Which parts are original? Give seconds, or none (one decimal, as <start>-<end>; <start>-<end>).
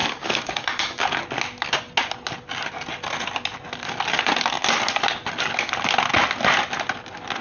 1.2-7.4